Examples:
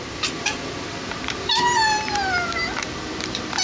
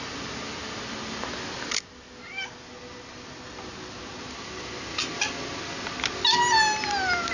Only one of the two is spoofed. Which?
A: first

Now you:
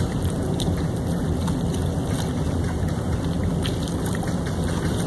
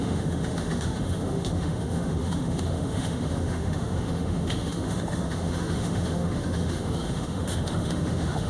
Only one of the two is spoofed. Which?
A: second